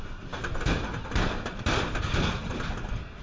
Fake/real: real